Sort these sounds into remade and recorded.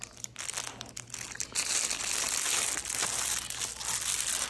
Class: recorded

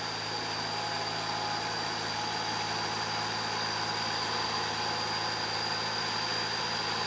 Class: recorded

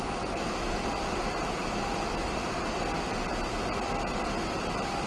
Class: recorded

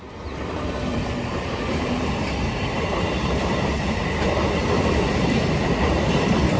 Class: recorded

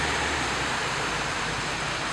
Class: remade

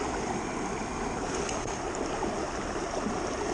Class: recorded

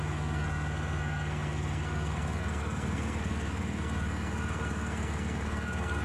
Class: remade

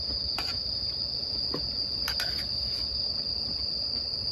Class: recorded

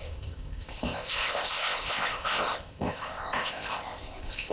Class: remade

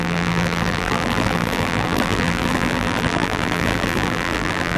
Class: remade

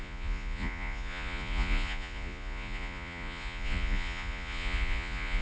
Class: remade